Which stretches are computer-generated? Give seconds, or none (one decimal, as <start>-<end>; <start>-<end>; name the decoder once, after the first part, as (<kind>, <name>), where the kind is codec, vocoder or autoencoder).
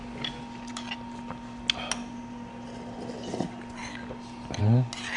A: none